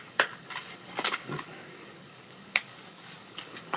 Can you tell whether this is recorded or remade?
remade